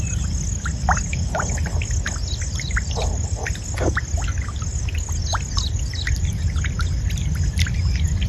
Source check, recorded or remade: recorded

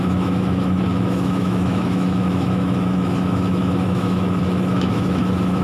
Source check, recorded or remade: remade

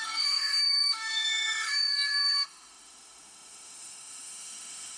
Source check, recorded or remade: remade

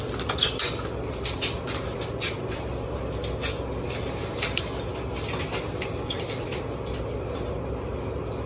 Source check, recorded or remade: recorded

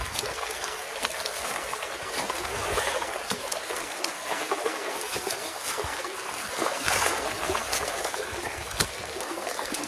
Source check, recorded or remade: remade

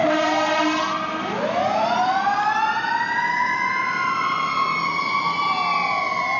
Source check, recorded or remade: recorded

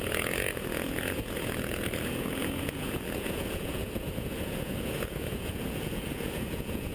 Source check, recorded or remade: remade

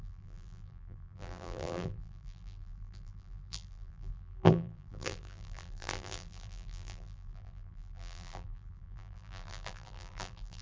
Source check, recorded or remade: remade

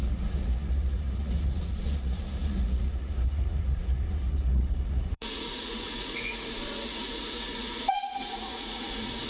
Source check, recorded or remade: remade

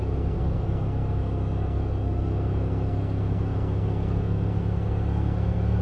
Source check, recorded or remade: remade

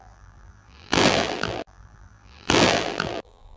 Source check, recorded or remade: remade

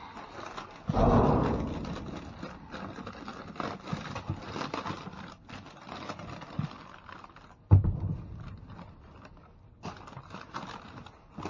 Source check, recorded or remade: recorded